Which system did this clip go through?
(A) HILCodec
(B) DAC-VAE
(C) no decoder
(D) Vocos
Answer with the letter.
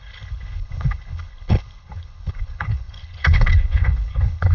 A